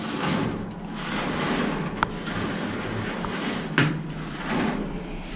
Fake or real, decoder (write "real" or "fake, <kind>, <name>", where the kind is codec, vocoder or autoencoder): fake, vocoder, BigVGAN v2